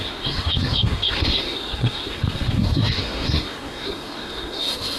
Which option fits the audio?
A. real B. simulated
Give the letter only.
B